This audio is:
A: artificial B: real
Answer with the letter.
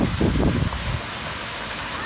B